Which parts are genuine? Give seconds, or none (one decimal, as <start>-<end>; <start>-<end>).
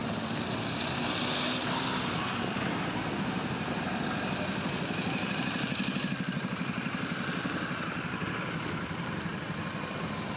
0.0-10.4